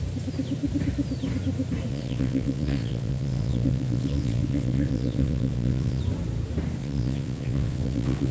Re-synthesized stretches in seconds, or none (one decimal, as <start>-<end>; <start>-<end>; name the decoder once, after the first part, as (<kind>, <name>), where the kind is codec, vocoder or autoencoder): 1.9-6.0 (vocoder, WaveNeXt); 6.8-8.3

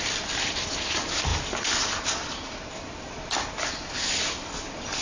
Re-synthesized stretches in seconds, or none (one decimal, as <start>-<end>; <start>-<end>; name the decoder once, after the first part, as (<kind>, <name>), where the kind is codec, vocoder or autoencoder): none

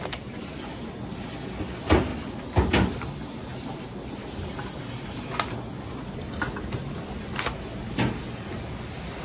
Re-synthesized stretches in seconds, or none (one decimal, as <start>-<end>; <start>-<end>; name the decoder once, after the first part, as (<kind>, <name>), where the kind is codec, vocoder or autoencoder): none

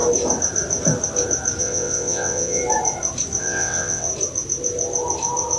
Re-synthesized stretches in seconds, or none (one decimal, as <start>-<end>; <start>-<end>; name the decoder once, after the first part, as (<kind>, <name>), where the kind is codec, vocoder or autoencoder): 1.6-2.6 (vocoder, WaveNeXt); 3.4-4.1

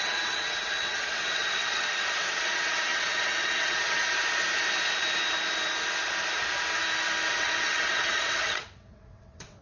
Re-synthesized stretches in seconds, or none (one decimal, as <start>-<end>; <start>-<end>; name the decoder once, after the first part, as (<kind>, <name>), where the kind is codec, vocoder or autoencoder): 0.0-4.0 (vocoder, WaveNeXt); 7.3-9.6

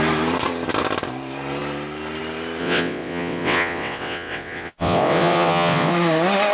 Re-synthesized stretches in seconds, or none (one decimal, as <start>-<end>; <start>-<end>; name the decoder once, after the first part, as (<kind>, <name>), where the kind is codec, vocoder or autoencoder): 2.6-5.9 (vocoder, WaveNeXt)

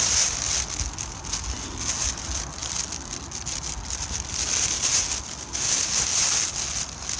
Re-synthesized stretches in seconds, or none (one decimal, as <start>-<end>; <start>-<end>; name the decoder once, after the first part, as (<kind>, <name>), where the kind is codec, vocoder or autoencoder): none

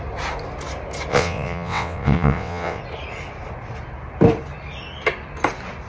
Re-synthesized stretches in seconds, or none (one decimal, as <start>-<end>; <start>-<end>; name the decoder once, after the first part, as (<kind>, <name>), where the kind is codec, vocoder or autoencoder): 1.1-2.8 (vocoder, WaveNeXt)